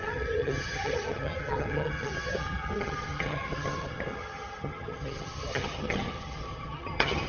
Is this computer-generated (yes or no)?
yes